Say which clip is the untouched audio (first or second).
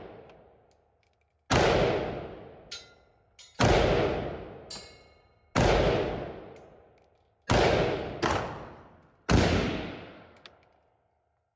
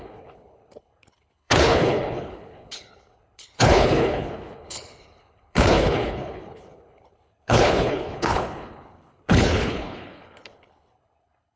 first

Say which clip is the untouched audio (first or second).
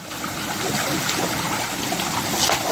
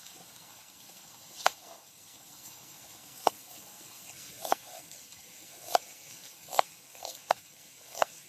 first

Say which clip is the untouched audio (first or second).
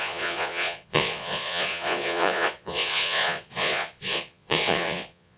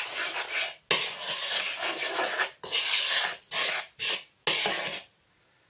second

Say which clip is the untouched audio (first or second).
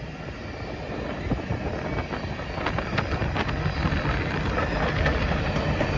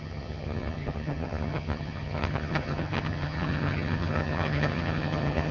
first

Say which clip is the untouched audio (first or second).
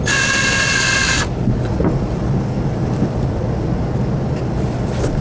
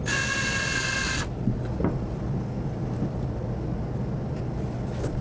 second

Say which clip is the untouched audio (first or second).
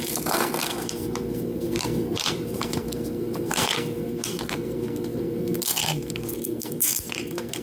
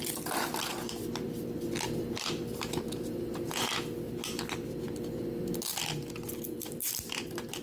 second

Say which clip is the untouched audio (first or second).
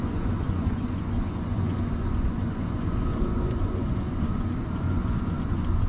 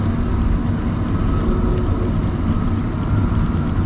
second